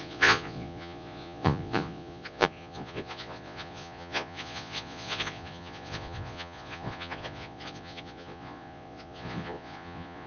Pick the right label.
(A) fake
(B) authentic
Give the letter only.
A